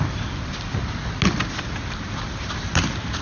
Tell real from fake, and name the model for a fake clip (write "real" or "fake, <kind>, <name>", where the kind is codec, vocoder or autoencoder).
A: real